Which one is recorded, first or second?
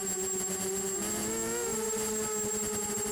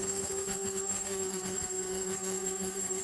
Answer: first